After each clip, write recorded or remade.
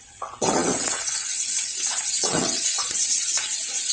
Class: remade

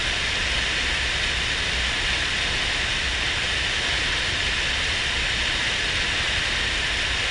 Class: recorded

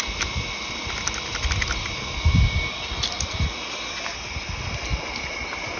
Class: recorded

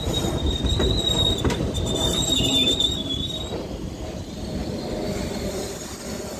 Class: recorded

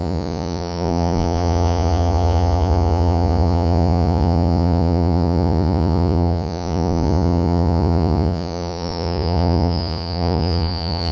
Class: remade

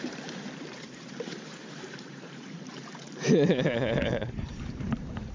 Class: remade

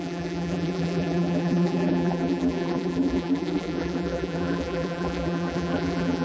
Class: remade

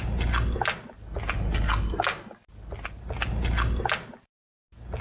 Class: recorded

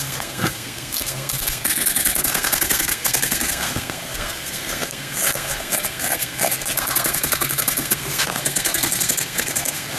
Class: remade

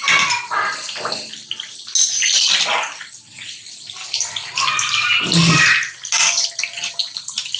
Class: recorded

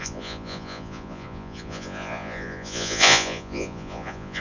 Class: remade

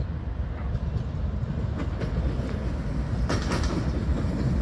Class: recorded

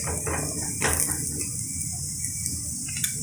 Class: recorded